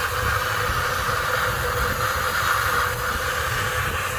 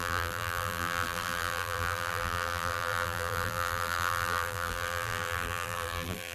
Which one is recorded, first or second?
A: first